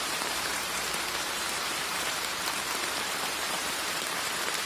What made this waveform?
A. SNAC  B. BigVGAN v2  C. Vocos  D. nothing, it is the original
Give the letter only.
B